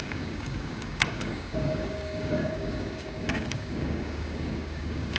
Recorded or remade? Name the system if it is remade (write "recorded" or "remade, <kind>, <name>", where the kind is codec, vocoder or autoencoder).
remade, codec, DAC